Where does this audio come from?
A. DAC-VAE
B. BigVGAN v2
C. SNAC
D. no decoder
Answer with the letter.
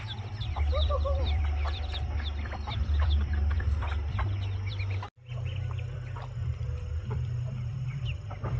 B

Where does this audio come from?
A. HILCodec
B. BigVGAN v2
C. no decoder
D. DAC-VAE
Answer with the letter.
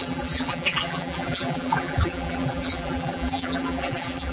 B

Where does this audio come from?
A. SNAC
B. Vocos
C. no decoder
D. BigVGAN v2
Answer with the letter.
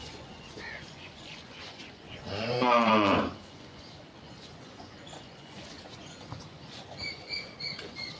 B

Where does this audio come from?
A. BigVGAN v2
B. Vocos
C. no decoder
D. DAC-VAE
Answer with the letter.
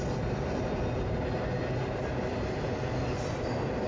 C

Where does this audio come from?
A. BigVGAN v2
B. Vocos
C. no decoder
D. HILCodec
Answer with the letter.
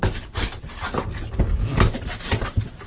C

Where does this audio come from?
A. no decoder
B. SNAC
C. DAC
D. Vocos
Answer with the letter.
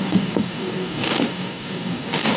C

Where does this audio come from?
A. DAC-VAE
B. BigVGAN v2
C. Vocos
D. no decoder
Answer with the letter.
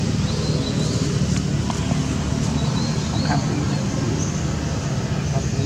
D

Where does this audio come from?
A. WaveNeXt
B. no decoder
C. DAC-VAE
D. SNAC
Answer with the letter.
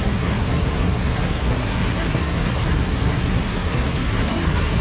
D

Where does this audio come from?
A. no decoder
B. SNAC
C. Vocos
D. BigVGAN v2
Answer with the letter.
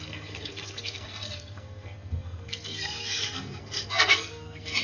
B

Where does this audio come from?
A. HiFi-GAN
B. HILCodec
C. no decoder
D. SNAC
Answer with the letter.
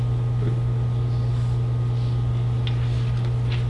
C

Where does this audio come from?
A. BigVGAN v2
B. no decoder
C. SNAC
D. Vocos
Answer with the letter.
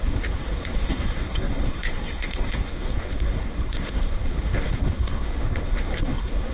C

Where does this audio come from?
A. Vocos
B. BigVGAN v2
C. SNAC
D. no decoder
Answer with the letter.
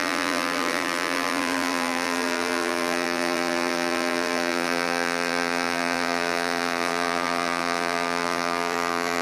B